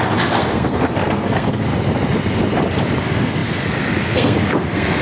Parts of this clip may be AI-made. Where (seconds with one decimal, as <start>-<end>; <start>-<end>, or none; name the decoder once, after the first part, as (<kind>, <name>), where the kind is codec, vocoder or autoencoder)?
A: 0.0-1.7 (codec, SNAC); 3.0-5.0